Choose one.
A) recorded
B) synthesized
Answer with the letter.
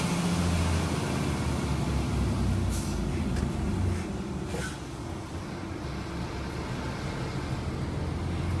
A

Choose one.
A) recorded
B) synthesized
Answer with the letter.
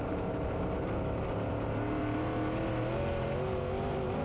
A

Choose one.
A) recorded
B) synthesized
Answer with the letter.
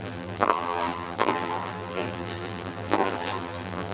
B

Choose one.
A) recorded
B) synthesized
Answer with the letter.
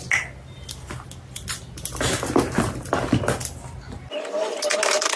A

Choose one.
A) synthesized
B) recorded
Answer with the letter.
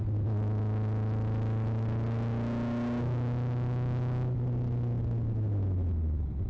B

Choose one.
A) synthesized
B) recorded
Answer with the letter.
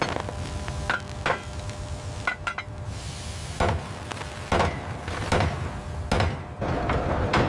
B